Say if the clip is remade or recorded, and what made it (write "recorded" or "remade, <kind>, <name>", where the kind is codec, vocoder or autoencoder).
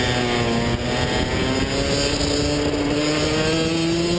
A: recorded